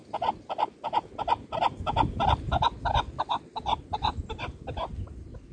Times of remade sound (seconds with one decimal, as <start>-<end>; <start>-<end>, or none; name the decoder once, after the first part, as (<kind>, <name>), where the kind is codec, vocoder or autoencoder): none